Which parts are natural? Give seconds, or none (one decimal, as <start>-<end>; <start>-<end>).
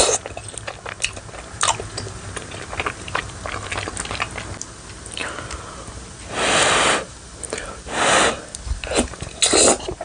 0.0-10.0